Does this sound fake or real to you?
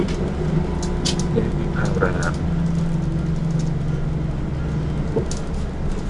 real